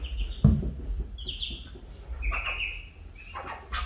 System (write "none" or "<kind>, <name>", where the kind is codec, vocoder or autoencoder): none